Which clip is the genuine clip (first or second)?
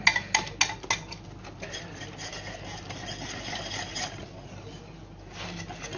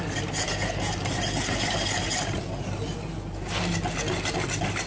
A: first